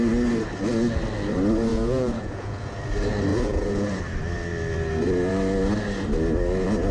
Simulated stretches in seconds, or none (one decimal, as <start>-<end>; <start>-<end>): 1.7-2.8; 3.3-4.0